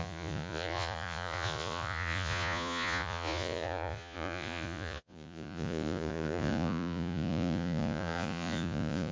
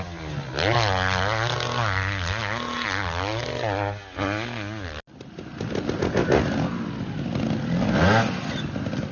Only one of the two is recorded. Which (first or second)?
second